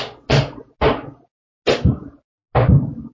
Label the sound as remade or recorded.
recorded